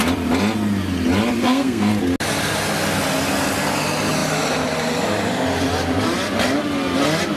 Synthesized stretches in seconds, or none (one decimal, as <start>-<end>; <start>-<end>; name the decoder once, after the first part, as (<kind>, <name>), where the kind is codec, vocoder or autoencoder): 1.4-1.9 (codec, SNAC)